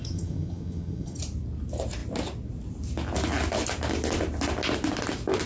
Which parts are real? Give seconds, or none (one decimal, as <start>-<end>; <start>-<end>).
1.2-5.5

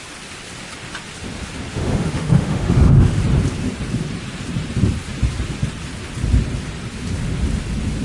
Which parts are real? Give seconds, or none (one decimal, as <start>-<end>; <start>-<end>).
0.0-1.7; 3.2-8.0

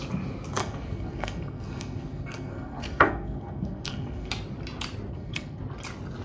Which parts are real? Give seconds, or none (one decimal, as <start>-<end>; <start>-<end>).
0.0-0.6; 4.3-5.1; 5.6-6.2

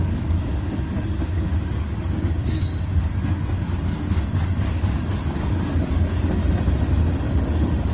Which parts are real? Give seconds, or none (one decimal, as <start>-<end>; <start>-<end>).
2.7-3.5; 6.4-7.3

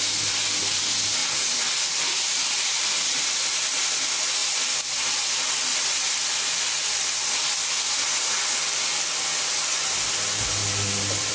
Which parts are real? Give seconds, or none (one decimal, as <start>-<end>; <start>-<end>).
0.0-4.4; 7.5-10.6

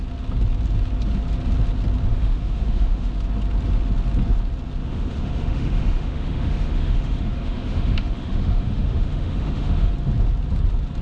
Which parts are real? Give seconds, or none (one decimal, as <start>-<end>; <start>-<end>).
0.0-2.1; 3.1-4.8; 9.9-11.0